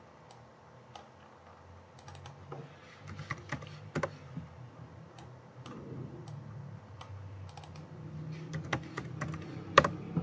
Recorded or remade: recorded